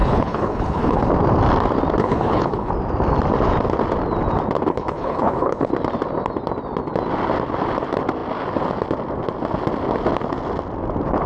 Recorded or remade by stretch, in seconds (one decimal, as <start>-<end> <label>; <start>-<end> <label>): 0.0-1.1 remade; 1.1-2.0 recorded; 2.0-2.7 remade; 2.7-4.7 recorded; 4.7-5.7 remade; 5.7-11.3 recorded